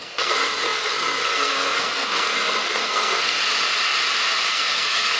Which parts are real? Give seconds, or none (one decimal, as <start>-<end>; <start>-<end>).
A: 3.4-4.5

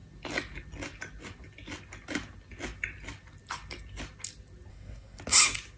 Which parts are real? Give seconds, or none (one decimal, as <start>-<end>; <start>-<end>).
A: 0.0-4.7; 5.2-5.8